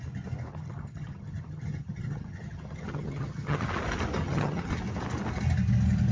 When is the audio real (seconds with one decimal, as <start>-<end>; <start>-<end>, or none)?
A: 0.0-0.5; 3.7-4.2; 4.7-6.1